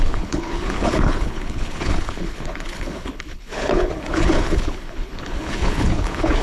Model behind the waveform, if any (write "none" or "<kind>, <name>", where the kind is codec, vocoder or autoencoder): codec, HILCodec